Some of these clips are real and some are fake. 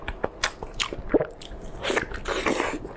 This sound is real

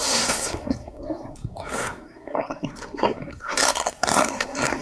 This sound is fake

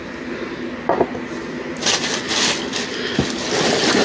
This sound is real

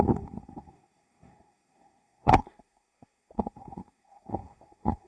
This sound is fake